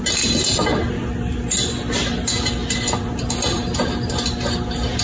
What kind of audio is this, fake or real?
real